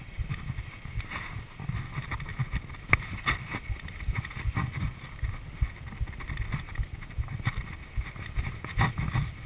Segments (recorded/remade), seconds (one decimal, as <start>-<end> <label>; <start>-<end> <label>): 0.0-9.5 recorded